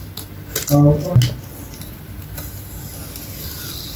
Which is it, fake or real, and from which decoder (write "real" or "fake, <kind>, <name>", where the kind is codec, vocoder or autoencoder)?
real